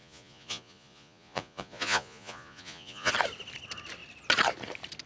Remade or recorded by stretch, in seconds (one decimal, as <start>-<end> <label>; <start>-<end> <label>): 0.0-3.1 remade; 3.1-5.1 recorded